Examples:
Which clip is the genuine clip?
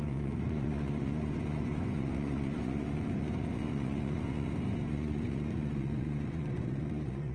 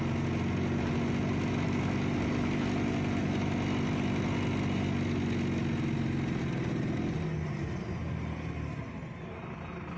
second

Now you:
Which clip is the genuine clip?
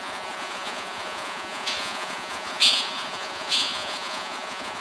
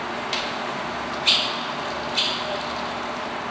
second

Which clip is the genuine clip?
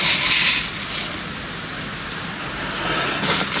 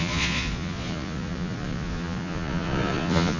first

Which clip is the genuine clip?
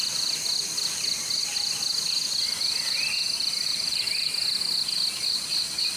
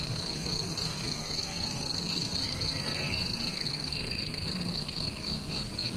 first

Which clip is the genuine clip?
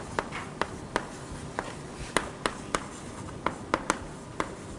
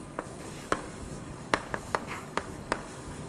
first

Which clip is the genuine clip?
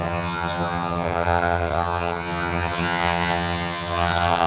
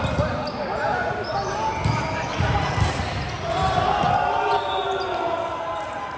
second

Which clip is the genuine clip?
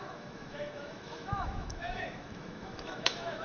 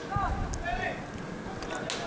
second